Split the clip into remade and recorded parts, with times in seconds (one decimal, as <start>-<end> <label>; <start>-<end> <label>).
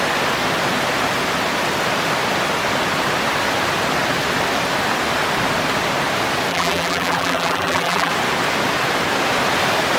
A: 0.0-6.5 recorded; 6.5-8.1 remade; 8.1-10.0 recorded